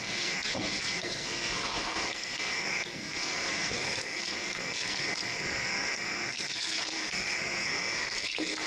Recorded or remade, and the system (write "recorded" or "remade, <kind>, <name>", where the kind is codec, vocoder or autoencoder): remade, codec, SNAC